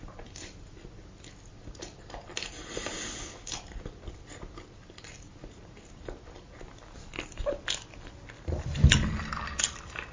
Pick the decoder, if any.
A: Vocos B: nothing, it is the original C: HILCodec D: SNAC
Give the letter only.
B